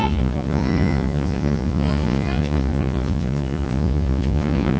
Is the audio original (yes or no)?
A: no